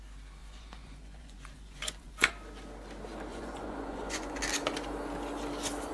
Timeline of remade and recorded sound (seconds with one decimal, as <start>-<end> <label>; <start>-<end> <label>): 0.0-0.4 recorded; 0.4-2.3 remade; 2.3-3.3 recorded; 3.3-4.4 remade; 4.4-5.9 recorded